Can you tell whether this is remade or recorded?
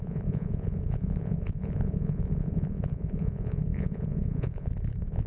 remade